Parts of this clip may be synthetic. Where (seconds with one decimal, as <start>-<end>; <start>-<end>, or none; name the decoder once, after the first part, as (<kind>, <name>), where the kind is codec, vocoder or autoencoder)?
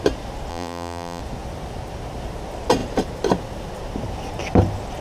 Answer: 0.5-1.2 (vocoder, BigVGAN v2)